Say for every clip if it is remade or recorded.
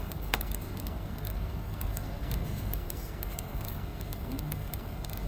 remade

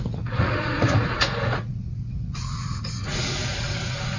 remade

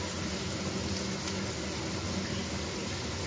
recorded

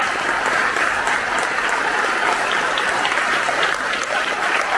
recorded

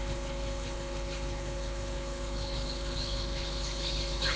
remade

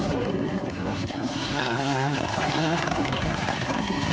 remade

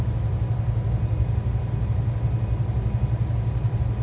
recorded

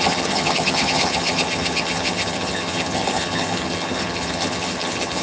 remade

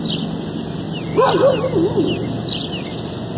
recorded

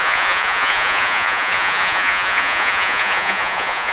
remade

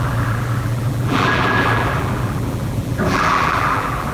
remade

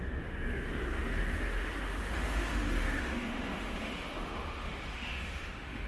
remade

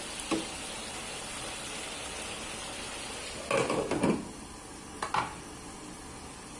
recorded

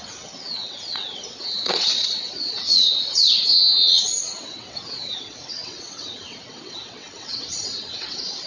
remade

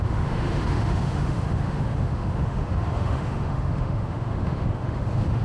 remade